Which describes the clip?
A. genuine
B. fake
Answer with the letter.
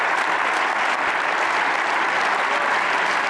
A